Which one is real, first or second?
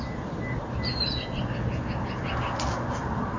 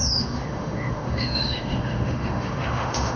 first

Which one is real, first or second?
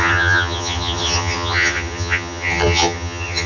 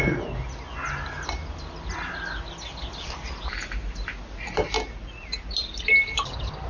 second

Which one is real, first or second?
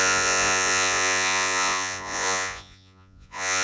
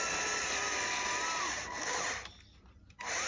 second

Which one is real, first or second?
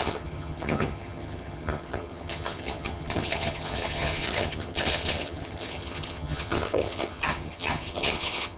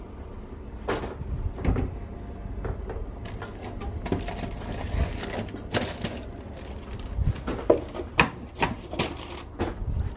second